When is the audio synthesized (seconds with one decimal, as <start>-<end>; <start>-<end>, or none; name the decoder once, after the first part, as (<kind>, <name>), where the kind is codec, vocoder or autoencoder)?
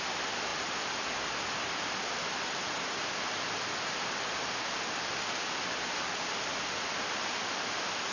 none